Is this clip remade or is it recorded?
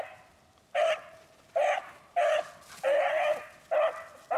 recorded